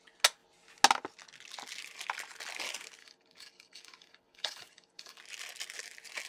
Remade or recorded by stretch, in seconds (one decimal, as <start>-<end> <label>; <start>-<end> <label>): 0.0-3.0 recorded; 3.0-5.2 remade; 5.2-6.3 recorded